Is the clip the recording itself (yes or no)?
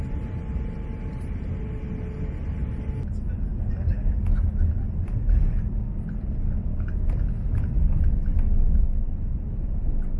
yes